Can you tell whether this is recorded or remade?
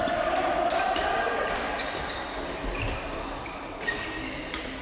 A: recorded